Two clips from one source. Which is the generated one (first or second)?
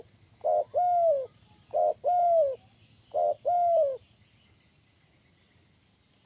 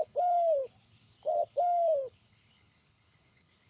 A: second